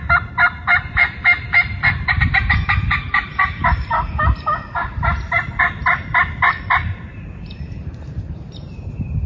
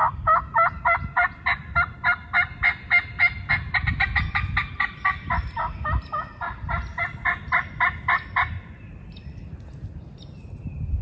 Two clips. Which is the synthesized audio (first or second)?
first